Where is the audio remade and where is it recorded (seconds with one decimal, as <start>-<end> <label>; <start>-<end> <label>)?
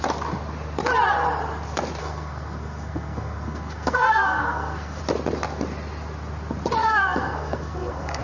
0.0-2.0 recorded; 2.0-5.0 remade; 5.0-6.8 recorded; 6.8-8.2 remade